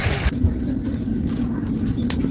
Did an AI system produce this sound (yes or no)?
no